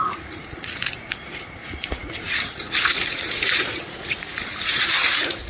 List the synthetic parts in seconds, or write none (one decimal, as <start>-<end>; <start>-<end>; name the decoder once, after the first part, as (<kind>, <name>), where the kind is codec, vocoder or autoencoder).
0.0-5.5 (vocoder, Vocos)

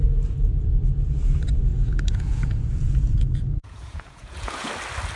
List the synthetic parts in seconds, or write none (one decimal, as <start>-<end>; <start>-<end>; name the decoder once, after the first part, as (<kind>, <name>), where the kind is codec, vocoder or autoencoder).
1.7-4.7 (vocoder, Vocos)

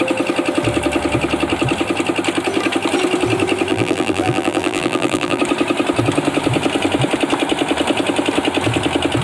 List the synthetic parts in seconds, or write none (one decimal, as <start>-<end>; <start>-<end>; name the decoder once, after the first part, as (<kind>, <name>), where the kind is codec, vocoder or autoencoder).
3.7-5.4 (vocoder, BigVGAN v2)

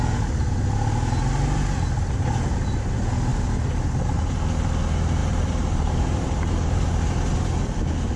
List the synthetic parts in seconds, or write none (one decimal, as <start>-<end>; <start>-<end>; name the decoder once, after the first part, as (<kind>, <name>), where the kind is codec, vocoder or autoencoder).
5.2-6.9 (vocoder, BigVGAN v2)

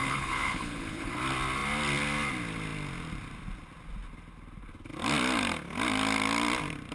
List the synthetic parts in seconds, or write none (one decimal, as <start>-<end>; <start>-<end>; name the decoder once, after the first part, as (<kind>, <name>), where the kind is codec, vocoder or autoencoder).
0.0-1.1 (codec, HILCodec)